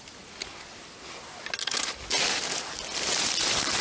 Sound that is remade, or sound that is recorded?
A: recorded